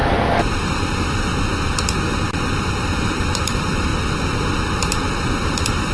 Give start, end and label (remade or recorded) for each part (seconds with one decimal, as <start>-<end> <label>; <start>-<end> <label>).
0.0-0.6 recorded; 0.6-1.3 remade; 1.3-2.6 recorded; 2.6-3.9 remade; 3.9-5.1 recorded; 5.1-5.9 remade